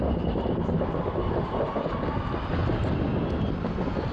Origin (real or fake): real